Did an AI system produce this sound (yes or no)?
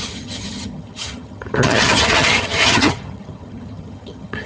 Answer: yes